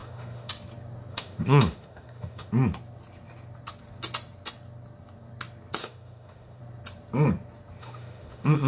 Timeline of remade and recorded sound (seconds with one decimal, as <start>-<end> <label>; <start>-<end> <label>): 0.0-0.5 remade; 0.5-1.1 recorded; 1.1-2.5 remade; 2.5-5.8 recorded; 5.8-6.6 remade; 6.6-7.8 recorded; 7.8-8.7 remade